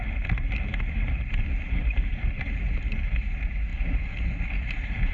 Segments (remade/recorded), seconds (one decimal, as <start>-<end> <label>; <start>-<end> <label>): 0.0-0.7 recorded; 0.7-2.6 remade; 2.6-5.1 recorded